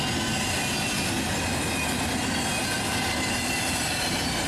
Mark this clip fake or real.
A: real